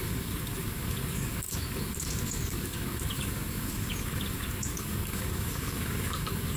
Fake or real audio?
fake